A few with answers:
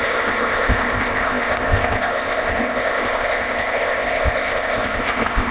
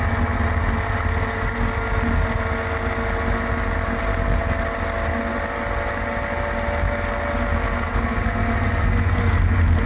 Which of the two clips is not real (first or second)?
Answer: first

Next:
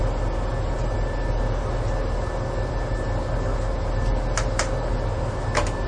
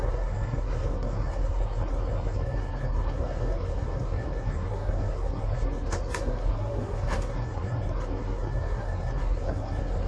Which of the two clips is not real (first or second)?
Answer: second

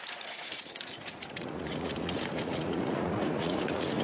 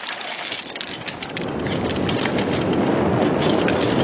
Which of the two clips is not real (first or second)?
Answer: first